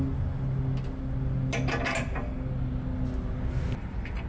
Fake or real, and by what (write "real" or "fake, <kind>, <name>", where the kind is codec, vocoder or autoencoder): real